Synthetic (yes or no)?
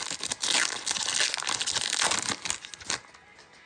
no